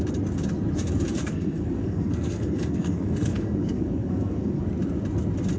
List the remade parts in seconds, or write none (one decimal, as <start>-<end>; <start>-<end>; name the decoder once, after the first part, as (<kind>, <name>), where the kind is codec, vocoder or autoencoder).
1.2-4.6 (codec, SNAC)